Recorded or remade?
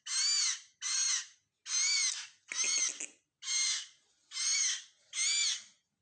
recorded